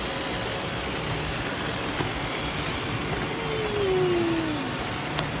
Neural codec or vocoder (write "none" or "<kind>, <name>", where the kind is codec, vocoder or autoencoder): none